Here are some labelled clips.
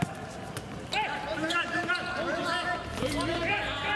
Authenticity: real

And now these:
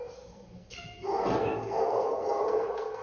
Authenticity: fake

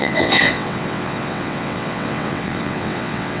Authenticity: fake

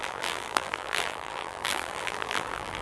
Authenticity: fake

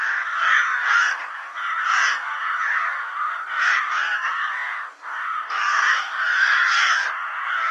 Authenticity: fake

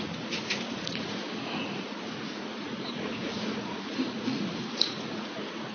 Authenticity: fake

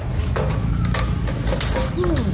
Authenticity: real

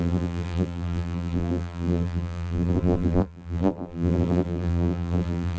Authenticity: fake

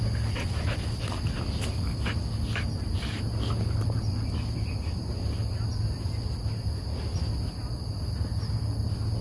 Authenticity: real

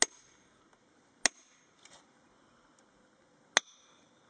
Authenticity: real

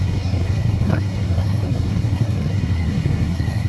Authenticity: fake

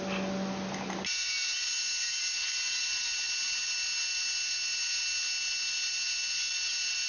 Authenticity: real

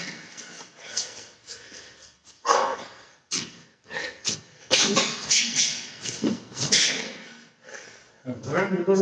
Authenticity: fake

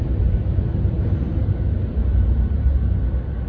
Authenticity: real